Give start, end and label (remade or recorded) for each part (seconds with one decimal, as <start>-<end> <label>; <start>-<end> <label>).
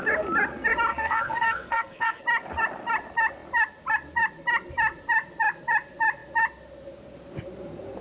0.0-0.9 recorded; 0.9-2.2 remade; 2.2-8.0 recorded